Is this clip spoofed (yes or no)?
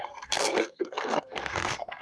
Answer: yes